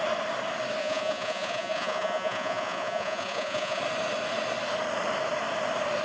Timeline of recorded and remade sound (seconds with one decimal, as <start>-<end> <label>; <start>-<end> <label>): 0.0-0.8 recorded; 0.8-3.8 remade; 3.8-6.0 recorded